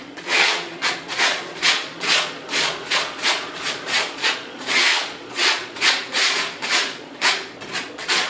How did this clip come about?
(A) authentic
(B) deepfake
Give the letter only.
B